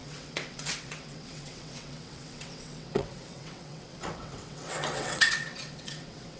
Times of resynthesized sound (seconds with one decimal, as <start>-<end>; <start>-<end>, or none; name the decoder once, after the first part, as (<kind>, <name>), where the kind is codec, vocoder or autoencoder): 0.0-6.4 (vocoder, WaveNeXt)